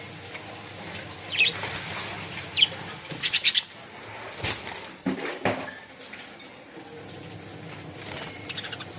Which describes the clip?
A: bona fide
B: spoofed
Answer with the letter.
A